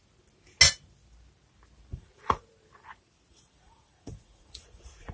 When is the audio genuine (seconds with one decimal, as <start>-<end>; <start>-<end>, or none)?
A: 0.0-1.9; 2.4-3.3